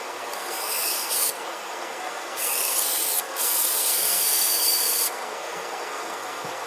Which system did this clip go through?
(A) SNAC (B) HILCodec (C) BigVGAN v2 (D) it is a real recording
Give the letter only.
A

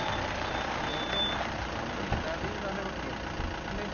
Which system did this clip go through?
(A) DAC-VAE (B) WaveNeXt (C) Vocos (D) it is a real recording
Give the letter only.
D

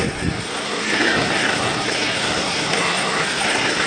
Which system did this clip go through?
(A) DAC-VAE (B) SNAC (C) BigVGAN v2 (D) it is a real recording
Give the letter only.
B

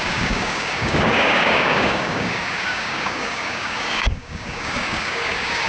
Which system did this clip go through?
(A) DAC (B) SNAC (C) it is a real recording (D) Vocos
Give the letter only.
A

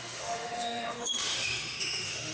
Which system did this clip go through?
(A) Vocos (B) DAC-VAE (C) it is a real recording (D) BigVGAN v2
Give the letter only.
B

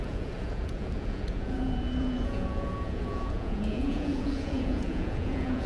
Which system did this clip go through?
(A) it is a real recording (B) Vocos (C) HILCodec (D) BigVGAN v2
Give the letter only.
B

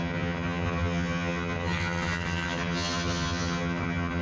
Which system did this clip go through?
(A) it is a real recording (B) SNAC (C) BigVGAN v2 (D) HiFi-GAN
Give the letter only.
D